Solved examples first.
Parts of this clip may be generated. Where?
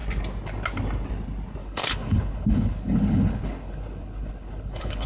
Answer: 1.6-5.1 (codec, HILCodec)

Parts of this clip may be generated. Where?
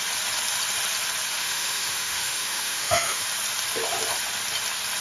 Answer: 1.4-3.2 (autoencoder, DAC-VAE)